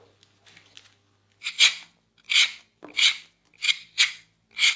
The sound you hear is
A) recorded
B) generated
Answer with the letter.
A